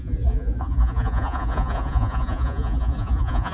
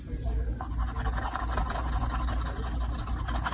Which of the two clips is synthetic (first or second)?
first